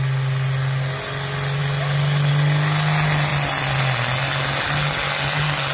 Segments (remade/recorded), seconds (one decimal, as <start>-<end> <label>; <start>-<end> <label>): 0.0-3.3 recorded; 3.3-3.8 remade; 3.8-5.7 recorded